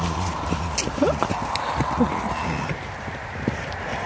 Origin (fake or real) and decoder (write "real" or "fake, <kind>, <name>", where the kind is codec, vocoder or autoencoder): real